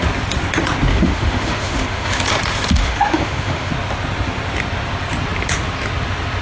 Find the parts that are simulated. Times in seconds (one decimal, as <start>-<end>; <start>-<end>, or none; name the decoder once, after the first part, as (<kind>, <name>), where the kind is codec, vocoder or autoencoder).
0.9-2.2 (autoencoder, DAC-VAE); 2.8-3.7